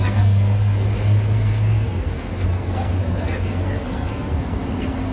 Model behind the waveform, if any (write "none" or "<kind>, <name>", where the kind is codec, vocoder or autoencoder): codec, SNAC